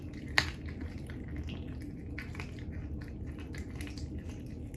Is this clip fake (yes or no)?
no